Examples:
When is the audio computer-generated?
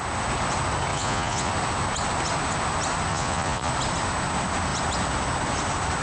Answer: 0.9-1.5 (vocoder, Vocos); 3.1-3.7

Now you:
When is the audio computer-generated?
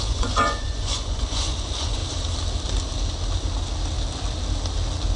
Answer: 0.0-2.0 (vocoder, Vocos)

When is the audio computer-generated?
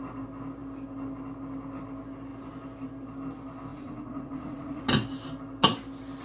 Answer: 3.7-4.8 (vocoder, Vocos)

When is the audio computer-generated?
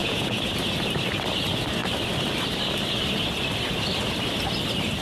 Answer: 0.0-0.5 (vocoder, Vocos)